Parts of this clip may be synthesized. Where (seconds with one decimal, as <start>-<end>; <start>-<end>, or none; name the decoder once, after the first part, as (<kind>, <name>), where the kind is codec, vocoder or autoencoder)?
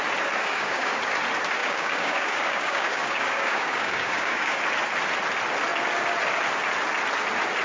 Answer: 0.4-1.0 (codec, DAC); 1.6-4.6